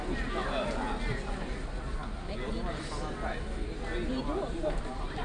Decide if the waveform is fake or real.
real